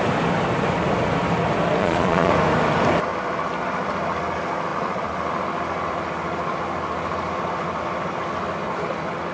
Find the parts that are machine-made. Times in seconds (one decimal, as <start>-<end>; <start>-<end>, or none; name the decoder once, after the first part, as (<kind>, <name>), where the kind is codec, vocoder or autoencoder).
1.8-2.3 (vocoder, Vocos)